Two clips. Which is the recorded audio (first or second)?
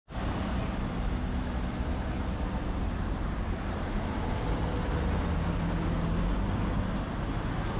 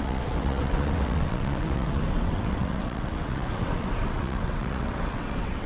first